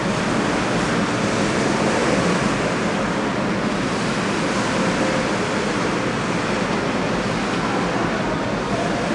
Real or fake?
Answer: real